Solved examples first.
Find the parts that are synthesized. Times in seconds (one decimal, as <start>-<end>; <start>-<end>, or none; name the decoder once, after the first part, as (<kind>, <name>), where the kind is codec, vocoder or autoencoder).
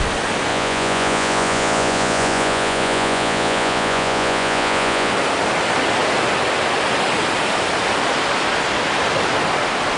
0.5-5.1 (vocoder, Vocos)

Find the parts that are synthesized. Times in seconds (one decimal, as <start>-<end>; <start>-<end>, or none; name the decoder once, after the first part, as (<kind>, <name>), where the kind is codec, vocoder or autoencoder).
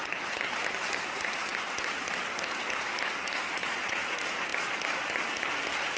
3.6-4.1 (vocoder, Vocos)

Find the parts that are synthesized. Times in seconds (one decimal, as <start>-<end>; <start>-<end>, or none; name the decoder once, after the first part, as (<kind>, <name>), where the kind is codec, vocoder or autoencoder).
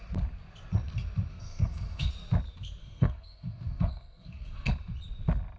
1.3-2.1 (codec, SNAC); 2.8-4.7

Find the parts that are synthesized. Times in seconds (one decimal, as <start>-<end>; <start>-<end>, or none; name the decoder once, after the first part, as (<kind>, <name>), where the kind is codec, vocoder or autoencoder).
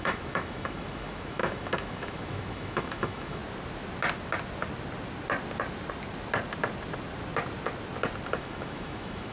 0.0-3.4 (autoencoder, DAC-VAE); 8.4-9.3